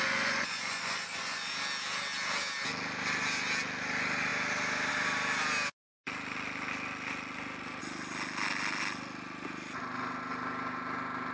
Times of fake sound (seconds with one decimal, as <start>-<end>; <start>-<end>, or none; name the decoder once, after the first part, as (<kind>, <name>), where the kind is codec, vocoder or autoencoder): 0.0-1.5 (vocoder, Vocos)